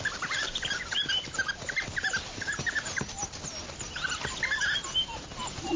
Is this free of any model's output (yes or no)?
yes